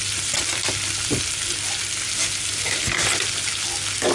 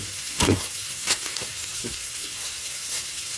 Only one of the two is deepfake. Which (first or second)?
second